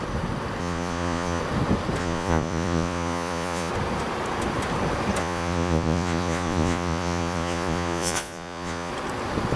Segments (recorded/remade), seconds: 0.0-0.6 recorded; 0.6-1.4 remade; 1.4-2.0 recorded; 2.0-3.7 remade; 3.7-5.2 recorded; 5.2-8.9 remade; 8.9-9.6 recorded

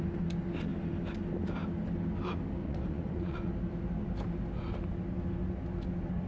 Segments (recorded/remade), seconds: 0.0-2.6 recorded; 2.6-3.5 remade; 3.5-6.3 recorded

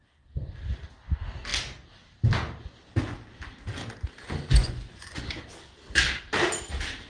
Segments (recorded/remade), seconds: 0.0-4.5 recorded; 4.5-5.2 remade; 5.2-7.1 recorded

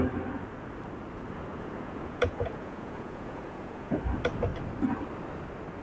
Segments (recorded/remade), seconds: 0.0-1.5 recorded; 1.5-4.0 remade; 4.0-5.8 recorded

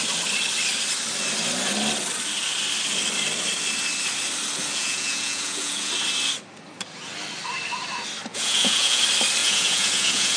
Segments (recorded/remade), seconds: 0.0-4.7 recorded; 4.7-5.9 remade; 5.9-8.3 recorded; 8.3-9.0 remade; 9.0-9.4 recorded; 9.4-10.4 remade